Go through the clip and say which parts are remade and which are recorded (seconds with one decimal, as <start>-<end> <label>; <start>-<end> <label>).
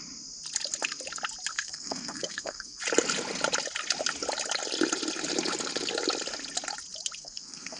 0.0-1.5 recorded; 1.5-2.8 remade; 2.8-7.2 recorded; 7.2-7.8 remade